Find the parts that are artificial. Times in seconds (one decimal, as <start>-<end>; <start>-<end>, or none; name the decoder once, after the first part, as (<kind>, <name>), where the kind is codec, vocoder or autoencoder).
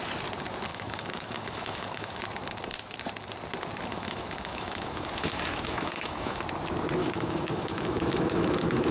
0.7-2.2 (autoencoder, DAC-VAE); 3.9-6.4; 7.0-8.9